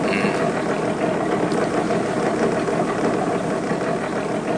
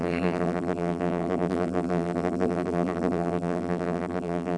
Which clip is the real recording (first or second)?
first